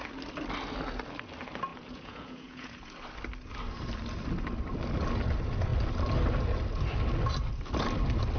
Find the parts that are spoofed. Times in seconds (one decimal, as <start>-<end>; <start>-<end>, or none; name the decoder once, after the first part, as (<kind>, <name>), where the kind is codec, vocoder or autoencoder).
1.7-2.8 (vocoder, Vocos)